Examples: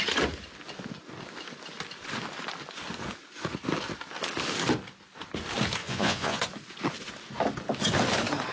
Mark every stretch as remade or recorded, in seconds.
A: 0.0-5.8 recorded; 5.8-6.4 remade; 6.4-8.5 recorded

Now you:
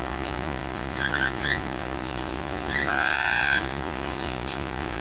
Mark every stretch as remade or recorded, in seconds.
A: 0.0-5.0 remade

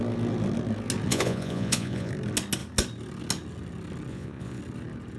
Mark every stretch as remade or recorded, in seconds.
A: 0.0-1.1 recorded; 1.1-2.1 remade; 2.1-4.1 recorded; 4.1-4.6 remade; 4.6-5.2 recorded

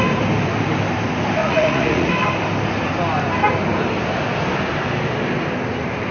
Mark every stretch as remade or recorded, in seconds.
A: 0.0-1.4 recorded; 1.4-2.1 remade; 2.1-6.1 recorded

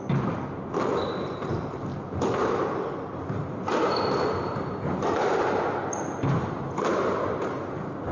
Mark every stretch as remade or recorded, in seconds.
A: 0.0-8.1 recorded

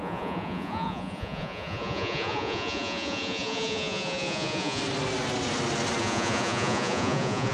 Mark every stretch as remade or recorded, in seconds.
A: 0.0-4.8 remade; 4.8-6.0 recorded; 6.0-7.5 remade

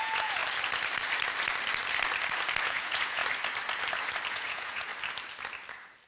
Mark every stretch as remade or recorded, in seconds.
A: 0.0-0.4 remade; 0.4-2.6 recorded; 2.6-3.2 remade; 3.2-4.3 recorded; 4.3-4.9 remade; 4.9-6.1 recorded